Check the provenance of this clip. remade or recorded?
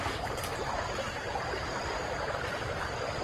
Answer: remade